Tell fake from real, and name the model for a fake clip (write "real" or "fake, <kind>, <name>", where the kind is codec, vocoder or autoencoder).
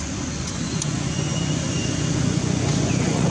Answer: fake, vocoder, Vocos